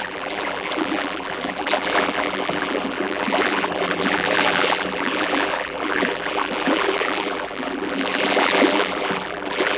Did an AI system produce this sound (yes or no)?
yes